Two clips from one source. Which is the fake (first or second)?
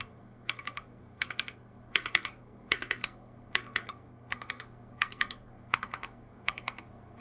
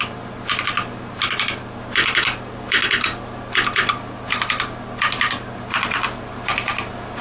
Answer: first